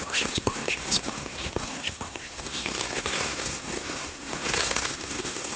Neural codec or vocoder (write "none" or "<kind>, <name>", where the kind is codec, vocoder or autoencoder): codec, SNAC